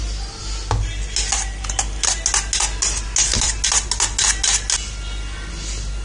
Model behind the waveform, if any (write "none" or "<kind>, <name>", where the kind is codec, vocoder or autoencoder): none